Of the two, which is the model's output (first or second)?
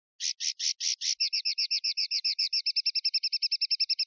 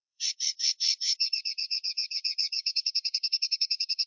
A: second